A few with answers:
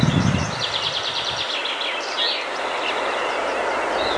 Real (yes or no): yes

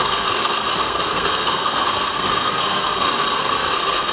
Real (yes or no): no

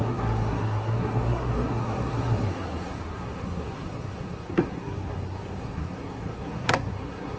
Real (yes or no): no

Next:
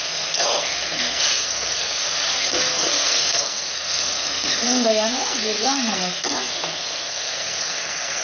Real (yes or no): no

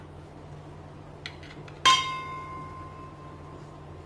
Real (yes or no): yes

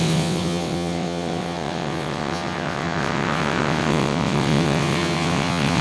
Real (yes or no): no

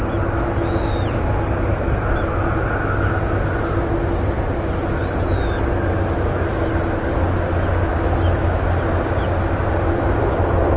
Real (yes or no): yes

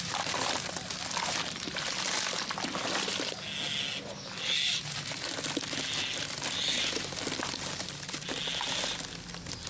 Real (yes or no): yes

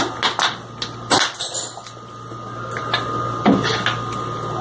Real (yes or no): yes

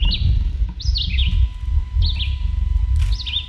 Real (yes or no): yes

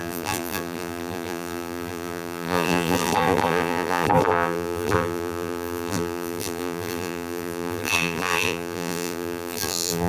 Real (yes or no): no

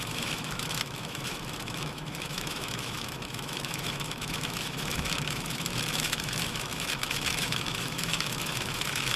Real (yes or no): no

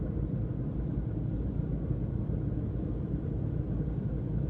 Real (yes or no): yes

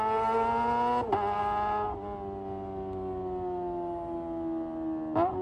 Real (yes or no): yes